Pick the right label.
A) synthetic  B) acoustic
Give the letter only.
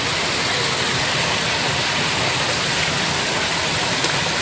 B